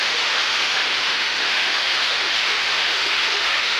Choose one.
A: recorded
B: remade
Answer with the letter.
B